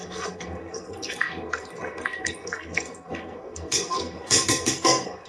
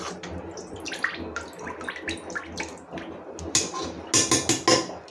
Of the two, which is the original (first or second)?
second